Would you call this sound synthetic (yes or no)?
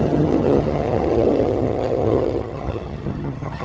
yes